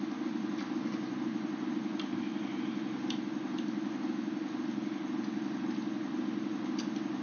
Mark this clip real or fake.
real